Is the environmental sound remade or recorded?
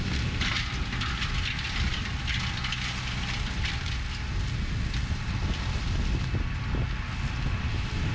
recorded